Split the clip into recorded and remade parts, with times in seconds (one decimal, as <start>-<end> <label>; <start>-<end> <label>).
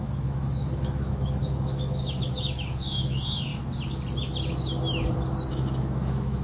0.0-3.5 remade; 3.5-5.5 recorded; 5.5-6.4 remade